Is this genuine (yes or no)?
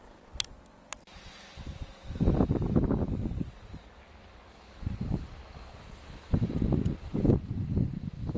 yes